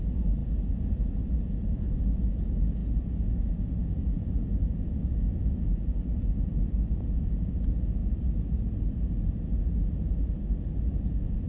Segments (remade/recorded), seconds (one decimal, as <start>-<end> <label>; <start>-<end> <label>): 0.0-8.0 remade; 8.0-10.8 recorded; 10.8-11.5 remade